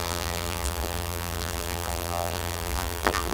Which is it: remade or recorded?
remade